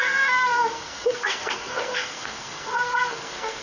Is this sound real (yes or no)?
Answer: no